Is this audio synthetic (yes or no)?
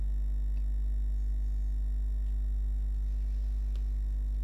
no